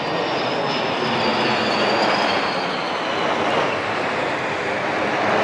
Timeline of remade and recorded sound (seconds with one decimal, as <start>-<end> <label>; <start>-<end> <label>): 0.0-5.4 recorded